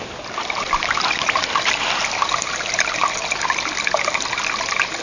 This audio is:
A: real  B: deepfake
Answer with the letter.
A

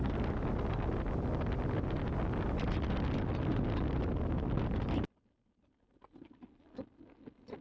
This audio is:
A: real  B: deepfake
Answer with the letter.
A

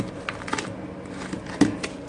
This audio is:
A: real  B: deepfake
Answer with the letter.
A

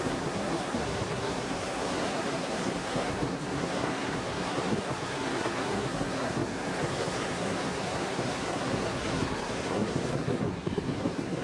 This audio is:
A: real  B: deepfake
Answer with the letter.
B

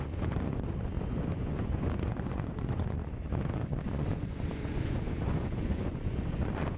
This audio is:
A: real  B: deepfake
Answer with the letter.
B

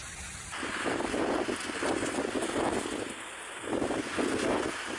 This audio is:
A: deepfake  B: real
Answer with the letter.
B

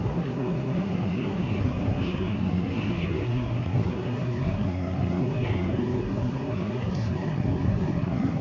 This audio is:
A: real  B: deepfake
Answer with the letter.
B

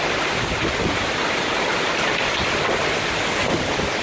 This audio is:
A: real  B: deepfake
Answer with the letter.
A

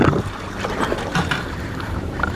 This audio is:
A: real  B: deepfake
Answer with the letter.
B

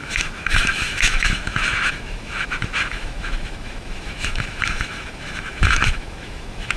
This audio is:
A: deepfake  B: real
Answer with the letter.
A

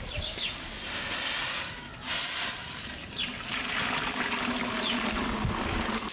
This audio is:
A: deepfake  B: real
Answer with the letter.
B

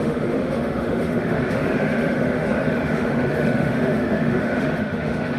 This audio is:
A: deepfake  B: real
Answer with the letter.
A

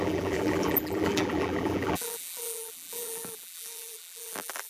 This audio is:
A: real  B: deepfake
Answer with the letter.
B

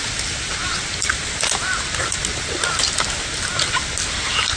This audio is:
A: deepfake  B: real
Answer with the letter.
B